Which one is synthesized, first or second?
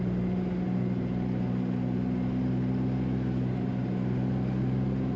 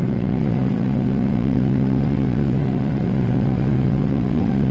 second